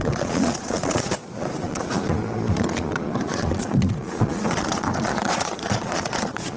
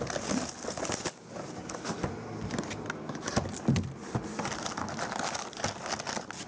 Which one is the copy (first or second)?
first